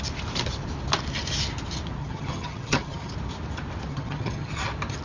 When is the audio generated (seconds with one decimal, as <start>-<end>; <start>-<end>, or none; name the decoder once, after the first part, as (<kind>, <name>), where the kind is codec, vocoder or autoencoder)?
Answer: 2.0-3.1 (vocoder, HiFi-GAN); 3.9-4.6